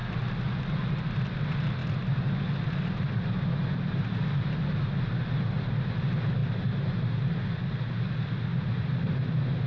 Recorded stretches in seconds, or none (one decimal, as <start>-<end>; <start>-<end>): 0.0-9.7